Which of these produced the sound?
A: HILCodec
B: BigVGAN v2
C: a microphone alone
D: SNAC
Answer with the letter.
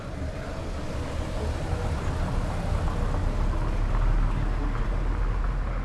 C